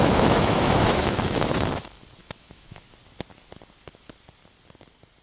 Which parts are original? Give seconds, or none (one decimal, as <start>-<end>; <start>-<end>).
1.4-2.2; 2.8-5.2